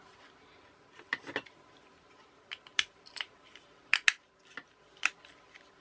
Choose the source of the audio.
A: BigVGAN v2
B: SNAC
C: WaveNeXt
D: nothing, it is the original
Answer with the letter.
D